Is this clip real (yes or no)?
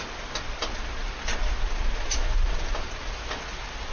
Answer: yes